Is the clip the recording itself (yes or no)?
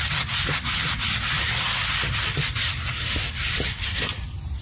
yes